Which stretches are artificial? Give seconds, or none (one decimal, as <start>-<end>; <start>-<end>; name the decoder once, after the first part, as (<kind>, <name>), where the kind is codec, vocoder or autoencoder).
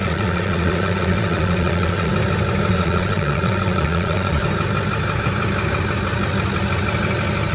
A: 0.0-2.1 (vocoder, Vocos); 2.7-4.4